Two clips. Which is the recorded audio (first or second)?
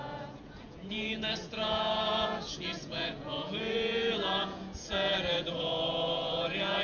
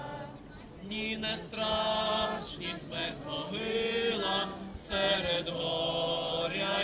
second